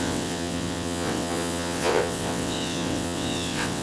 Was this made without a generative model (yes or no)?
no